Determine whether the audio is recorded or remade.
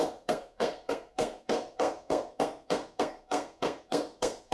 remade